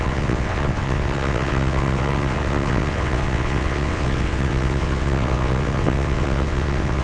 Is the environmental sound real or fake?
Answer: fake